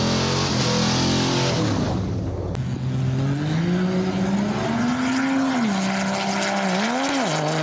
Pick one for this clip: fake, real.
real